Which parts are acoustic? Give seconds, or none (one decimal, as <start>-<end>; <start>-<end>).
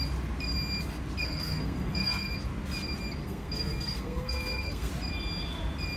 0.0-1.2; 2.3-3.2; 4.9-6.0